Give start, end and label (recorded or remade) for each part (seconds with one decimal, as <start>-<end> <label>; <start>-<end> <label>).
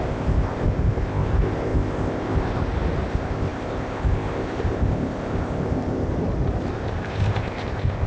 0.0-2.6 remade; 2.6-3.1 recorded; 3.1-6.1 remade; 6.1-6.7 recorded; 6.7-8.1 remade